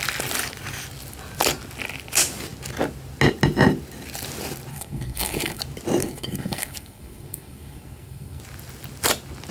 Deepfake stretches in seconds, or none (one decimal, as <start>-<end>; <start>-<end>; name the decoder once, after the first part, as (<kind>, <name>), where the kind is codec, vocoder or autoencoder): 4.7-5.6 (codec, SNAC); 6.0-8.4